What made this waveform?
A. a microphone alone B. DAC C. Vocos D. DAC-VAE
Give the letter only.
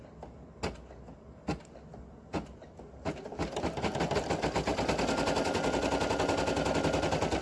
A